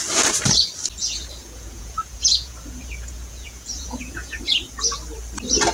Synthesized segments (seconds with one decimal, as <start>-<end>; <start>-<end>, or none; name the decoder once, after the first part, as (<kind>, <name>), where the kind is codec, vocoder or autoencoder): 1.0-4.4 (vocoder, Vocos)